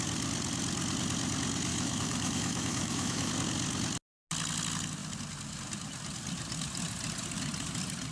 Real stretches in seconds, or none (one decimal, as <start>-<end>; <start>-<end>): 0.0-1.7; 3.3-8.1